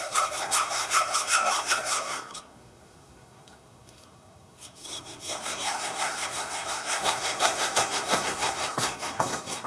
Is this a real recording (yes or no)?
no